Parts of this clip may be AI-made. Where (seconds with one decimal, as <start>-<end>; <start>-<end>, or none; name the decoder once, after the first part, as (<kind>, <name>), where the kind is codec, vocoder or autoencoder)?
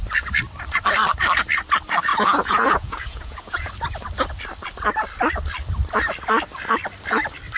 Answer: 2.1-3.7 (vocoder, Vocos)